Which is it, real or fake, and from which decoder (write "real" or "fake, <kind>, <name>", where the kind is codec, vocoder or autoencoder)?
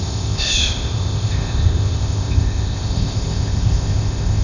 fake, codec, ZipCodec